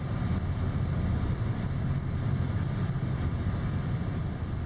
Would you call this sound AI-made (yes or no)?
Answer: yes